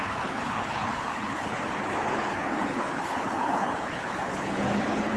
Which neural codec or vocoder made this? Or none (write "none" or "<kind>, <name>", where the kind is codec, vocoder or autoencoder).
codec, HILCodec